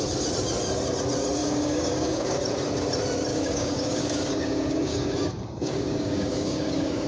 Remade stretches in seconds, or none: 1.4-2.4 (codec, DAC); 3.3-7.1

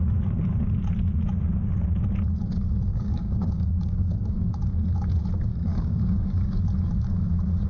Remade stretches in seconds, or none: 2.9-4.6 (codec, DAC); 5.5-6.6

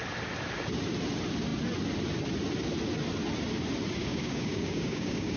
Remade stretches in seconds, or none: 4.0-5.4 (codec, DAC)

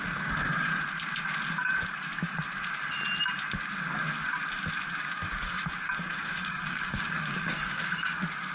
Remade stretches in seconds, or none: 0.0-0.7 (codec, DAC); 5.0-8.5

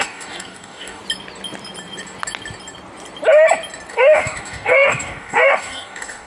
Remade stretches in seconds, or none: 0.0-1.0 (codec, DAC); 3.9-6.3

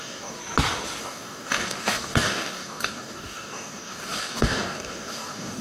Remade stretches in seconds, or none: 0.0-0.4 (codec, DAC); 1.0-5.6